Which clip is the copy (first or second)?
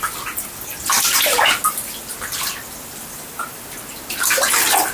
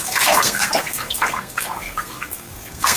second